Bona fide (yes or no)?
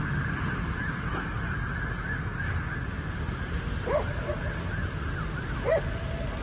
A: yes